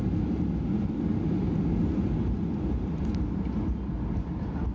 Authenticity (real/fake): real